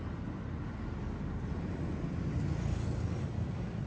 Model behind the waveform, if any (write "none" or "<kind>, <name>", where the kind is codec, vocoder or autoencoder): none